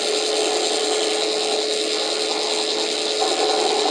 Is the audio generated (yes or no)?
no